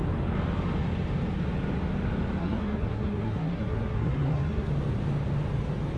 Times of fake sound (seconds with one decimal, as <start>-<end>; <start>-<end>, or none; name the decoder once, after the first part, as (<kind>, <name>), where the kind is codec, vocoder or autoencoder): 2.4-4.7 (codec, SNAC)